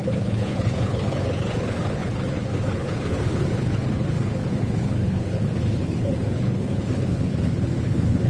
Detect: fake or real fake